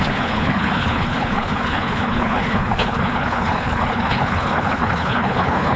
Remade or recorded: remade